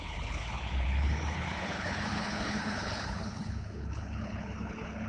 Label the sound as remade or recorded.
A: remade